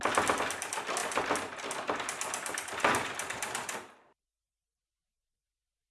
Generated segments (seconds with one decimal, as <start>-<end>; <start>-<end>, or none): none